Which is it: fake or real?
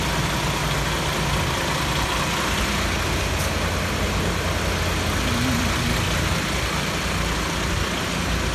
real